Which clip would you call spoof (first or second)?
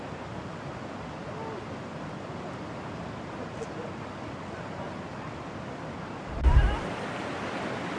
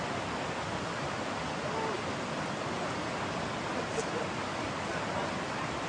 second